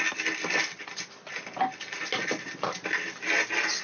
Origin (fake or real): real